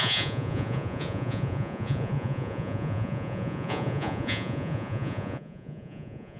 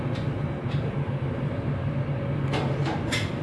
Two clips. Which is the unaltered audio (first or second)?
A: second